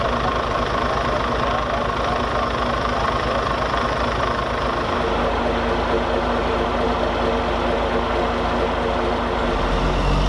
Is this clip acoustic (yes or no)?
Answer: yes